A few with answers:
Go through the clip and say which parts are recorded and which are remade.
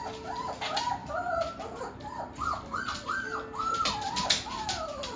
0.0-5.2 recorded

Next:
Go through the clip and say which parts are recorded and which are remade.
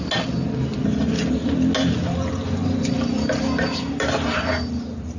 0.0-5.2 recorded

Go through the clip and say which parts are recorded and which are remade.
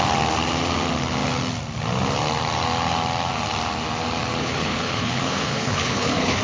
0.0-4.4 recorded; 4.4-6.4 remade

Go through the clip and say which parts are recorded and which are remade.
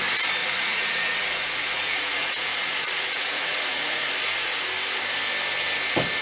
0.0-0.4 recorded; 0.4-4.1 remade; 4.1-6.2 recorded